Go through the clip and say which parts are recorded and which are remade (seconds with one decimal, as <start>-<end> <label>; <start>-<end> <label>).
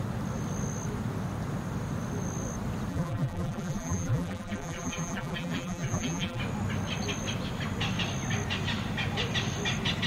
0.0-2.9 recorded; 2.9-6.4 remade; 6.4-10.1 recorded